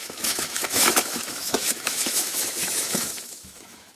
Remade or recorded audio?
remade